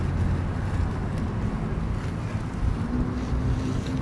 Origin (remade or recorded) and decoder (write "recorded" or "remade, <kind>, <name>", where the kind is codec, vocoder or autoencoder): recorded